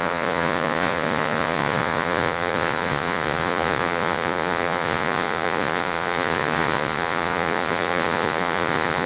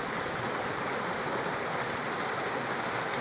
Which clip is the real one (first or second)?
second